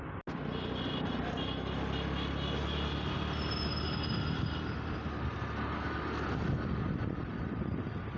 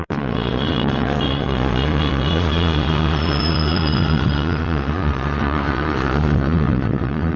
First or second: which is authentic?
first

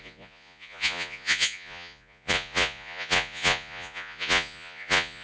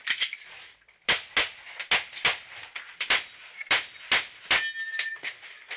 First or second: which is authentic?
second